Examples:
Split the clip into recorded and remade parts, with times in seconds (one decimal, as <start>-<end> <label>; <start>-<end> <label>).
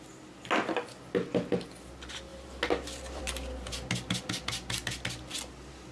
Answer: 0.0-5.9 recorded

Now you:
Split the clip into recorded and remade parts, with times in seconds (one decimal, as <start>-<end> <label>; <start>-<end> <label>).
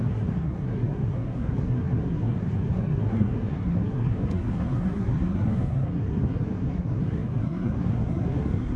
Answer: 0.0-8.8 remade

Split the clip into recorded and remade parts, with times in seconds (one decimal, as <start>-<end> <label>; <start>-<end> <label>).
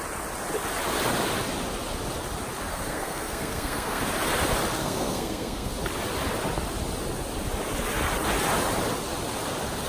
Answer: 0.0-2.7 recorded; 2.7-4.0 remade; 4.0-4.8 recorded; 4.8-5.7 remade; 5.7-9.9 recorded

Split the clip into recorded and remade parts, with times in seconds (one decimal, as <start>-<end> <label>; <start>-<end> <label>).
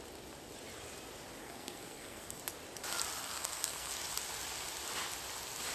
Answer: 0.0-1.4 recorded; 1.4-2.4 remade; 2.4-3.2 recorded; 3.2-3.9 remade; 3.9-5.7 recorded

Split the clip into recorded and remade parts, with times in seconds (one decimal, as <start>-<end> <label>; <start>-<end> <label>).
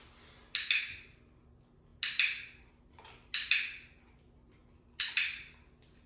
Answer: 0.0-6.1 recorded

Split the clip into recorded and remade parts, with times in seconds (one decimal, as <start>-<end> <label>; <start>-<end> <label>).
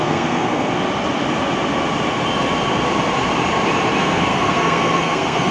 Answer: 0.0-0.7 remade; 0.7-4.0 recorded; 4.0-5.5 remade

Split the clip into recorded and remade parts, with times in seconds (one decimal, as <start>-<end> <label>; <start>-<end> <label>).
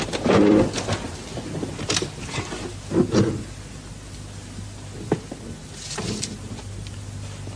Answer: 0.0-7.6 recorded